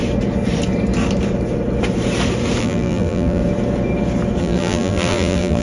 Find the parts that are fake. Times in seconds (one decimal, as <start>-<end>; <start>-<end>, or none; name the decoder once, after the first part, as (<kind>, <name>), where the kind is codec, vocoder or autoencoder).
2.6-3.4 (vocoder, BigVGAN v2); 4.4-5.6